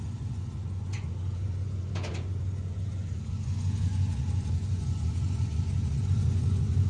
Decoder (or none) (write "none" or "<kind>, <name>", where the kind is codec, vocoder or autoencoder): vocoder, Vocos